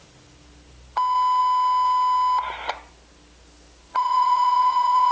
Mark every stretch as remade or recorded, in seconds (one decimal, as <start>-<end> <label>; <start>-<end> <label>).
0.0-3.9 recorded; 3.9-5.1 remade